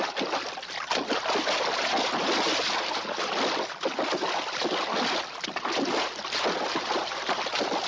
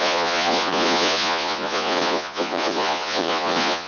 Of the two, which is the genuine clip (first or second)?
first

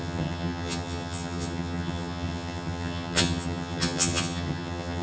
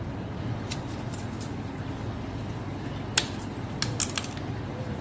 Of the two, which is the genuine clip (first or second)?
second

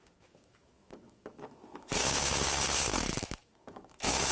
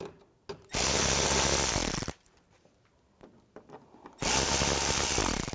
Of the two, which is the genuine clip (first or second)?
second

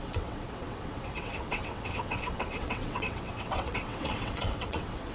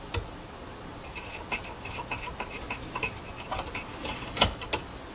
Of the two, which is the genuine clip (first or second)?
second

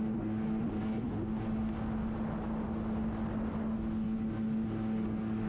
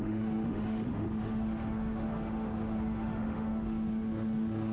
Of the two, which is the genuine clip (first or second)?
first